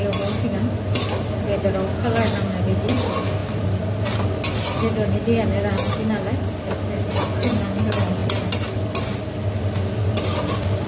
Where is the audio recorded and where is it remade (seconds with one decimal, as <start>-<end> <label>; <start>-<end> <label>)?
0.0-10.9 recorded

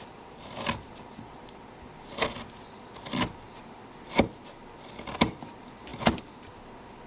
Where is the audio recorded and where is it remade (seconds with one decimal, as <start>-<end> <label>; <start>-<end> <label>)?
0.0-7.1 recorded

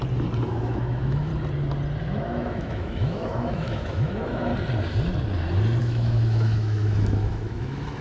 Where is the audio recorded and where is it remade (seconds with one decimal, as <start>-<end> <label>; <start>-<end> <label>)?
0.0-0.5 recorded; 0.5-1.3 remade; 1.3-2.0 recorded; 2.0-4.5 remade; 4.5-5.8 recorded; 5.8-8.0 remade